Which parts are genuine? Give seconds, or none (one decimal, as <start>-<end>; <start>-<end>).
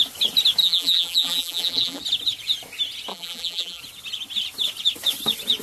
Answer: 0.0-0.6; 2.0-3.1; 3.8-5.6